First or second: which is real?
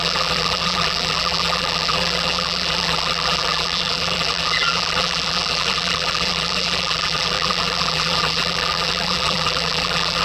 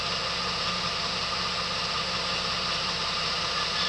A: second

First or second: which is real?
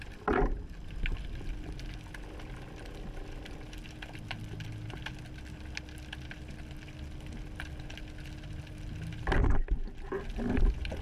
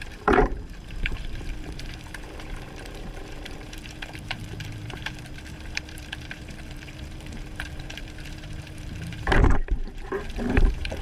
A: first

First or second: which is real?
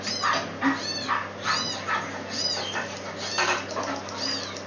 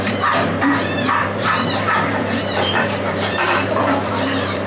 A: first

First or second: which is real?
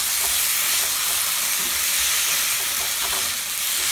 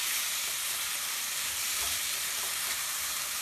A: first